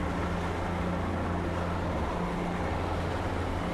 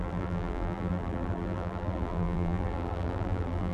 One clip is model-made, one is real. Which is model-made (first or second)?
second